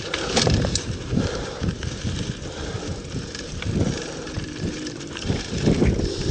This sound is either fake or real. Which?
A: fake